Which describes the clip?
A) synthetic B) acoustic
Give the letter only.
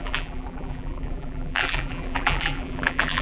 A